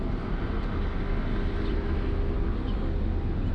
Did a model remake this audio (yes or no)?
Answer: no